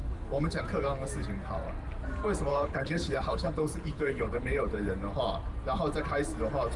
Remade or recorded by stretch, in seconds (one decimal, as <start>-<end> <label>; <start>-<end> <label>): 0.0-0.6 remade; 0.6-2.5 recorded; 2.5-4.9 remade; 4.9-6.8 recorded